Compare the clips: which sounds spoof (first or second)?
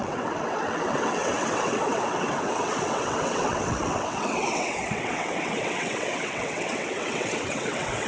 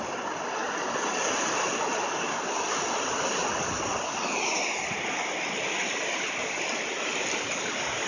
first